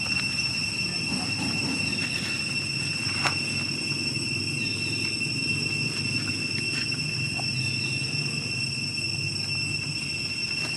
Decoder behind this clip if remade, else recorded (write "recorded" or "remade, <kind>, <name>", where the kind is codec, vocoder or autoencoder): recorded